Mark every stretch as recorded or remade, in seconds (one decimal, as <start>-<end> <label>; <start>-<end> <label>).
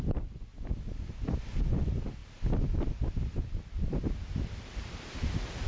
0.0-0.5 remade; 0.5-1.4 recorded; 1.4-2.2 remade; 2.2-3.9 recorded; 3.9-5.7 remade